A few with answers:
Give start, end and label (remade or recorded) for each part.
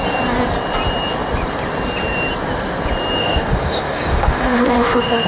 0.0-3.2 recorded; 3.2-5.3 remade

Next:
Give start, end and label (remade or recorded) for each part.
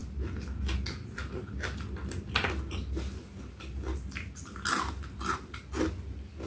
0.0-6.5 recorded